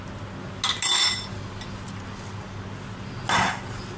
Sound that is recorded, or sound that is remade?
recorded